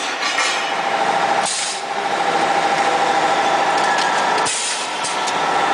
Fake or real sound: real